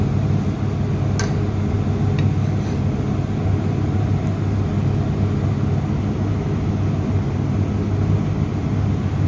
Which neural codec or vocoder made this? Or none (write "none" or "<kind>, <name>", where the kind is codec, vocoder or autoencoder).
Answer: none